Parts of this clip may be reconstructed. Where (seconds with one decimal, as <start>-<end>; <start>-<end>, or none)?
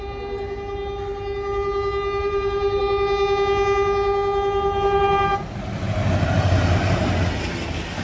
2.2-2.8